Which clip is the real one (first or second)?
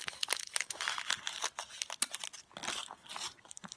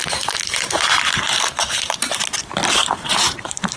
first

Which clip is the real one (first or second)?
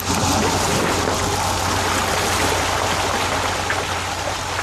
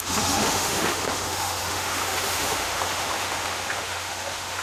first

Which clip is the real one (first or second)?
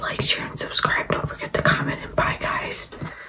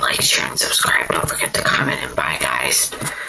first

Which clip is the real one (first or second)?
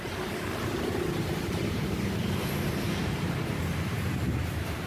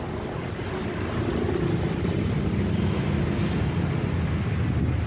second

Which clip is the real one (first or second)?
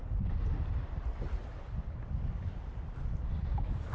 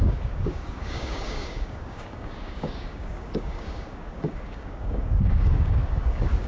first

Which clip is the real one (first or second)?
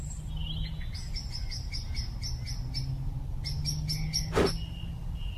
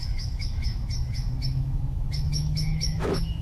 first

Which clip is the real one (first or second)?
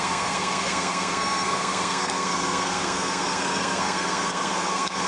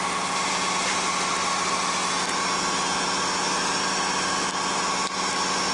second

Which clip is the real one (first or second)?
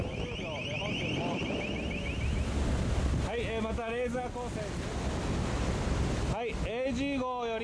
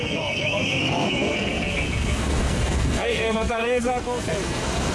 first